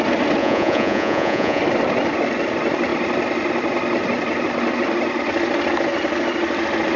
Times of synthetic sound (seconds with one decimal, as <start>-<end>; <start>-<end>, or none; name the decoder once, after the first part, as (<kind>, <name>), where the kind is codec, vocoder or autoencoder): 0.4-1.6 (vocoder, Vocos)